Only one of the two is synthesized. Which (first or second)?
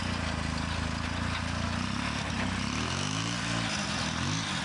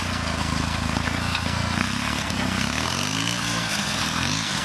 second